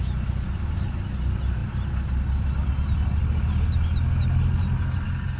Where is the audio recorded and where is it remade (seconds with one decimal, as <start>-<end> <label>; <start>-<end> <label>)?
0.0-5.4 recorded